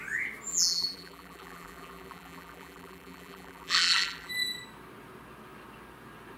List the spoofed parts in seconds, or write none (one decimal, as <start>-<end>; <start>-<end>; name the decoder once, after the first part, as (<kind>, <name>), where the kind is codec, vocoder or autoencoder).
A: 0.5-4.3 (vocoder, BigVGAN v2)